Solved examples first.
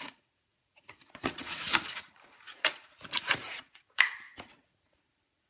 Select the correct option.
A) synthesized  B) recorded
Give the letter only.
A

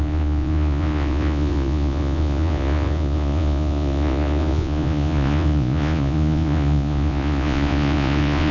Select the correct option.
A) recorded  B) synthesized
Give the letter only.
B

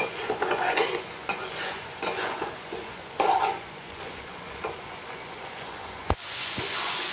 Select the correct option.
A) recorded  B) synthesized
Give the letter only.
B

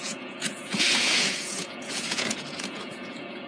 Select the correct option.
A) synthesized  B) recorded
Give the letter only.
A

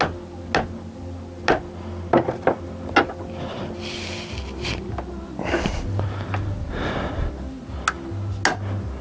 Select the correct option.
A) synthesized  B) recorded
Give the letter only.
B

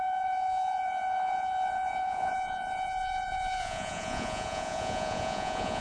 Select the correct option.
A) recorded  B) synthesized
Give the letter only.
B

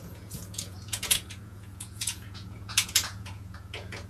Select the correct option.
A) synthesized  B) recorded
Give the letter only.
A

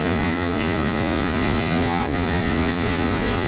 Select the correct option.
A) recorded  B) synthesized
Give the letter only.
B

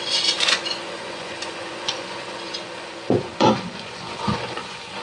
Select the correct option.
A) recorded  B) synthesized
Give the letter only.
B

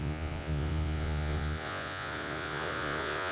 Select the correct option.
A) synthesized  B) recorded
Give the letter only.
A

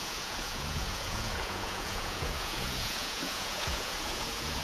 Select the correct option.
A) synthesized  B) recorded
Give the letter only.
A